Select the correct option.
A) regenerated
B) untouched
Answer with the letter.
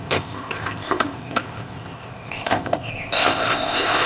A